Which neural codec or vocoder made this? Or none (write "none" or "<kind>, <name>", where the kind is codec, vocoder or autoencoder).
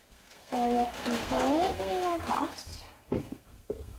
codec, SNAC